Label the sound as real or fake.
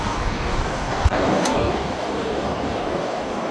fake